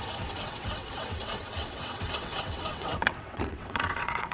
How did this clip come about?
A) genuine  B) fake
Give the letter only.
B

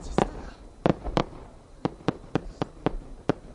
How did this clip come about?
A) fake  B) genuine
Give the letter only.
B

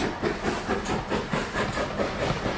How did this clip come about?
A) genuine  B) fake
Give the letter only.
A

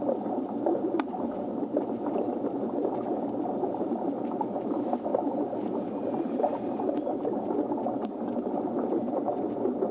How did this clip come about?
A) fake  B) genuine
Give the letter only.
B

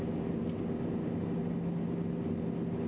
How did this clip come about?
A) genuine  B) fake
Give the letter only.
A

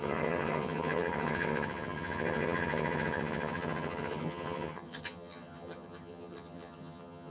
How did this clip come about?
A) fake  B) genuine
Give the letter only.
A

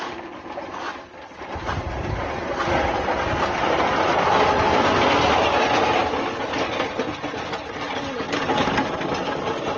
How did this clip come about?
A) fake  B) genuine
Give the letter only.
B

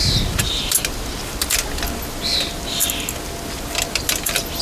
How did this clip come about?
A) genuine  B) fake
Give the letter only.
A